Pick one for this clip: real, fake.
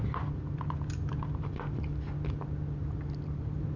real